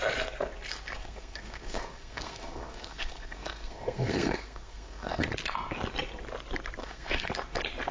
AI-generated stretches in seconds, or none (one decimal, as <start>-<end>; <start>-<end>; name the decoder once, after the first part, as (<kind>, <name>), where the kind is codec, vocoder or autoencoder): 1.0-5.3 (codec, SNAC); 6.8-7.3